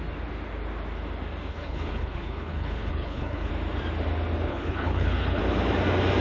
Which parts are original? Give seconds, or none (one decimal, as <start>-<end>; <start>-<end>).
0.0-1.5; 3.5-4.5; 5.4-6.2